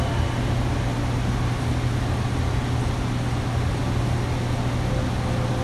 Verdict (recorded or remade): recorded